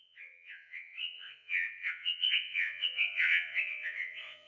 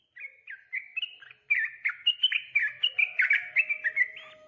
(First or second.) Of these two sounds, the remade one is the first